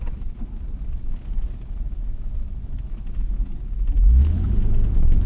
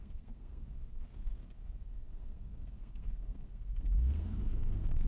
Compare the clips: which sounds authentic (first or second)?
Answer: first